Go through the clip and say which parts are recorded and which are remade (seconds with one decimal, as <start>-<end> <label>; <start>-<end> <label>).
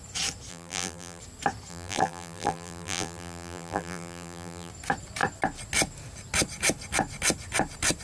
0.0-0.5 recorded; 0.5-1.2 remade; 1.2-1.7 recorded; 1.7-4.7 remade; 4.7-8.0 recorded